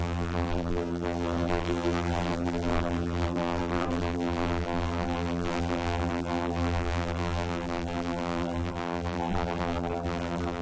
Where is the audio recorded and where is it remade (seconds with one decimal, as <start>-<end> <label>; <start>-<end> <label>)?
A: 0.0-10.6 remade